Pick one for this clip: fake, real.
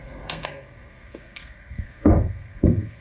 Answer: fake